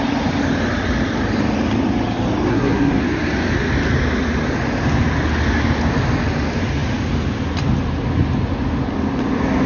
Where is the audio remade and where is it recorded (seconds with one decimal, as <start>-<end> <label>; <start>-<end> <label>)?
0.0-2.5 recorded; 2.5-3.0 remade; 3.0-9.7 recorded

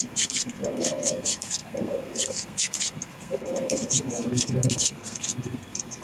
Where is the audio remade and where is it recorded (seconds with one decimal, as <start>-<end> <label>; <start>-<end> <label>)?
0.0-6.0 remade

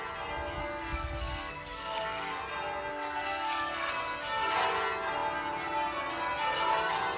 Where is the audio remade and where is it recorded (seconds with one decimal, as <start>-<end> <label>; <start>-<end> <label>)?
0.0-0.6 recorded; 0.6-2.4 remade; 2.4-2.9 recorded; 2.9-3.9 remade; 3.9-7.2 recorded

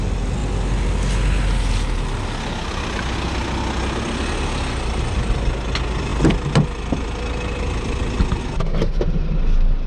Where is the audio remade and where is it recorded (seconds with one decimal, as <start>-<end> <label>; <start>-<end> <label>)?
0.0-9.9 recorded

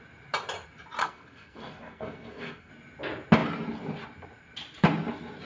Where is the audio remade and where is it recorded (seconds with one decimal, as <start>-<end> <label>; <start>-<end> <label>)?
0.0-1.0 recorded; 1.0-2.7 remade; 2.7-5.4 recorded

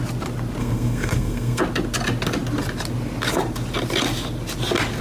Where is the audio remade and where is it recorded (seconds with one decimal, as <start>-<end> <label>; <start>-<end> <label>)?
0.0-0.6 recorded; 0.6-1.6 remade; 1.6-5.0 recorded

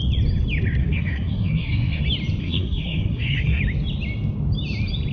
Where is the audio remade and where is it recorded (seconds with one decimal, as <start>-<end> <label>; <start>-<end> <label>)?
0.0-0.8 recorded; 0.8-2.0 remade; 2.0-2.4 recorded; 2.4-3.6 remade; 3.6-5.1 recorded